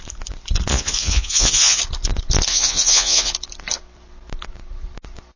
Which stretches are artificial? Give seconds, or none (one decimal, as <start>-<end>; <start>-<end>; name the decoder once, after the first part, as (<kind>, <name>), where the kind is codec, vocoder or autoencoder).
0.7-1.8 (vocoder, Vocos); 2.5-3.3